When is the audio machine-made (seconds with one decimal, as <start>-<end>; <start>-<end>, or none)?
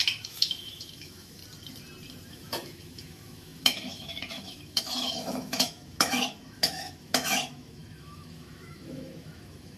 0.0-1.4; 2.3-9.8